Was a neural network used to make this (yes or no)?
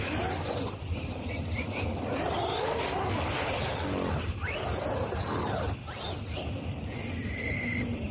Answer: no